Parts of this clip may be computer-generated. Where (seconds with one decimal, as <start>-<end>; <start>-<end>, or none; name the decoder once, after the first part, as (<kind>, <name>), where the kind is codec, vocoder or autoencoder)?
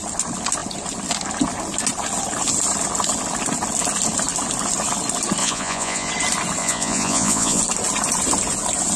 5.4-6.1 (vocoder, Vocos); 6.6-7.6